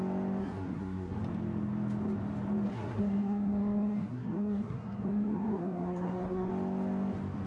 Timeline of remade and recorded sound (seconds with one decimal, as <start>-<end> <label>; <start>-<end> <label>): 0.0-0.4 recorded; 0.4-1.2 remade; 1.2-2.7 recorded; 2.7-6.5 remade; 6.5-7.5 recorded